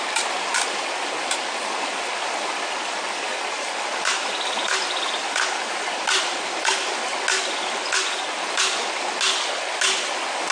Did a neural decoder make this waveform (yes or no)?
no